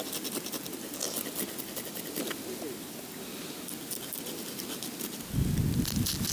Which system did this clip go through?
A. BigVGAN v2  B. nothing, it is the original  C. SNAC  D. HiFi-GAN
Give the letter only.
B